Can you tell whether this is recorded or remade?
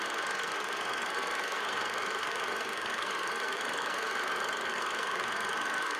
remade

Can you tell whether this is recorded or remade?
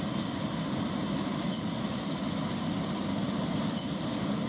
recorded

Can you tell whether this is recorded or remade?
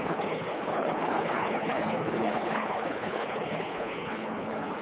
remade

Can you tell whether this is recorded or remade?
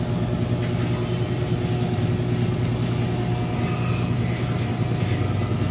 recorded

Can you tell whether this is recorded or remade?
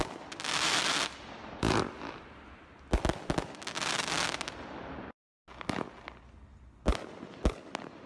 recorded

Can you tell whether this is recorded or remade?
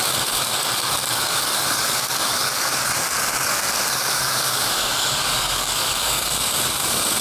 remade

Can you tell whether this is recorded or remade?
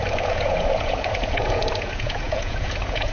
remade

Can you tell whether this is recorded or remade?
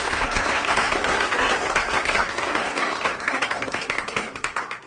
remade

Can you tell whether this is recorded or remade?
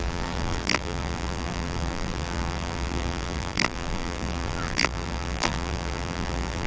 remade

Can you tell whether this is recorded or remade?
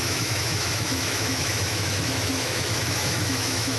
remade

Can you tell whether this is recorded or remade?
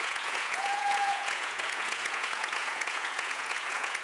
remade